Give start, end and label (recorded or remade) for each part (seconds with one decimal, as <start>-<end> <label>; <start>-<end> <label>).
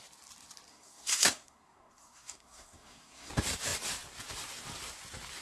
0.0-0.7 recorded; 0.7-3.3 remade; 3.3-5.4 recorded